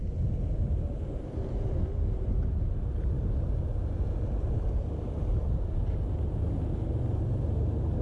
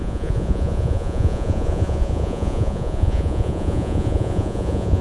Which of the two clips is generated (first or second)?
second